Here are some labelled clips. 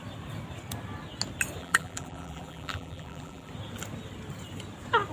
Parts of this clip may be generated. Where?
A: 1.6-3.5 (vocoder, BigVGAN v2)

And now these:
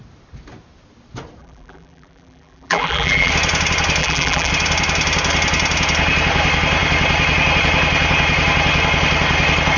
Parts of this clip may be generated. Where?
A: 1.4-3.3 (vocoder, BigVGAN v2); 4.0-4.5

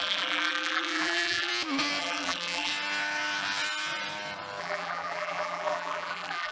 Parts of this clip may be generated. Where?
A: 0.0-1.5 (vocoder, BigVGAN v2); 2.0-2.7; 4.6-6.5

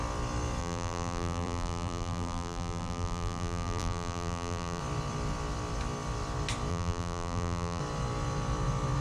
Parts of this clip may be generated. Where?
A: 0.6-4.8 (vocoder, BigVGAN v2); 6.7-7.8

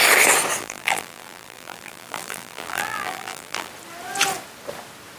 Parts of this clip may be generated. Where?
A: 0.6-3.7 (vocoder, BigVGAN v2)

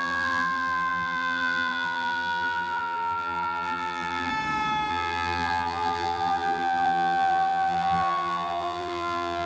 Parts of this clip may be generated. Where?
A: 0.0-4.3 (vocoder, BigVGAN v2); 4.9-9.5